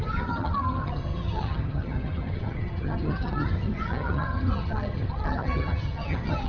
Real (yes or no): no